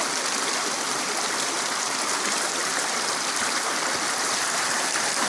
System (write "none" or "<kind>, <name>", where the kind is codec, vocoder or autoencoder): none